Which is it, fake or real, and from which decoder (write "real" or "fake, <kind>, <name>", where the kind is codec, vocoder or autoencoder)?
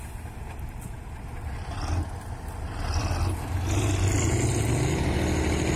real